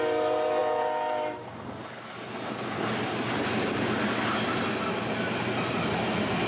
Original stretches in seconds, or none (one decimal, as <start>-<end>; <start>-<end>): 0.0-6.5